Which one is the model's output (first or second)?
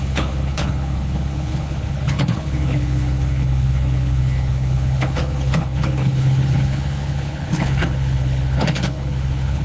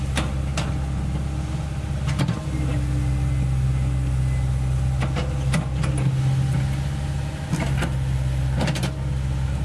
first